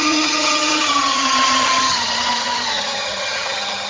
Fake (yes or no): yes